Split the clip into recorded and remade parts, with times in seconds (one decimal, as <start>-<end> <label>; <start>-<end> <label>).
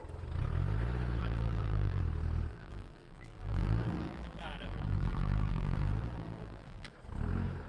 0.0-1.2 recorded; 1.2-2.0 remade; 2.0-2.5 recorded; 2.5-6.9 remade; 6.9-7.7 recorded